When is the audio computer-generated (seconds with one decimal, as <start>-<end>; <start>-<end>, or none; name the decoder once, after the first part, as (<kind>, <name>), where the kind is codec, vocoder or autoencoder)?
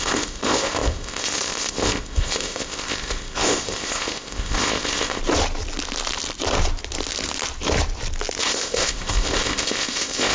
0.0-5.2 (codec, ZipCodec); 8.4-10.3